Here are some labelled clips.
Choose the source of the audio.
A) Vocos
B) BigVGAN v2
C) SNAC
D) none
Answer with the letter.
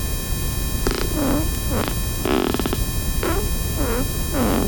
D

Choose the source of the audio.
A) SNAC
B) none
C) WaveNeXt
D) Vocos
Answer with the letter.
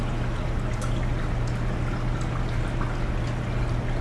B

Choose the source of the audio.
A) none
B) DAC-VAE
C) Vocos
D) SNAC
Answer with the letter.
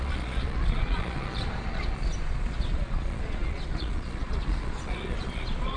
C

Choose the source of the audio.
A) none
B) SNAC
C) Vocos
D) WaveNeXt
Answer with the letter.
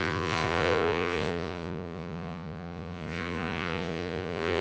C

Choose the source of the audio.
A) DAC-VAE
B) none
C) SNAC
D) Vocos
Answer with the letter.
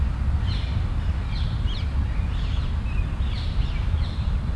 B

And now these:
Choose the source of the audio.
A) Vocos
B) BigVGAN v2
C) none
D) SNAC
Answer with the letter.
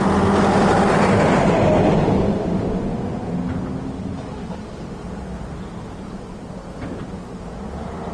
C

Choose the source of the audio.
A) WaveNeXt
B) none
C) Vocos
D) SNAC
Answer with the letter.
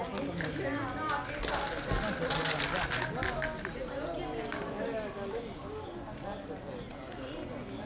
B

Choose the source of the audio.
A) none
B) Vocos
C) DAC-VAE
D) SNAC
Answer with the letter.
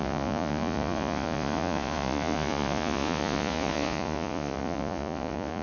B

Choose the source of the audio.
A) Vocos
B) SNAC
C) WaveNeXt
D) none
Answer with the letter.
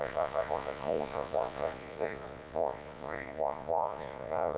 A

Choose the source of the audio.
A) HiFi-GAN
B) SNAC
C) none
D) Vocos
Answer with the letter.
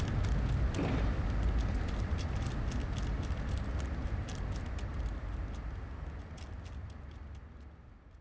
C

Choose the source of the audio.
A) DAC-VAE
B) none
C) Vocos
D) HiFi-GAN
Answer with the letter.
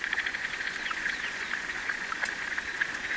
C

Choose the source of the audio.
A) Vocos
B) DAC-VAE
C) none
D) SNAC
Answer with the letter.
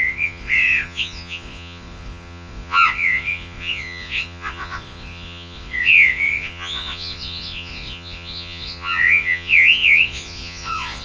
A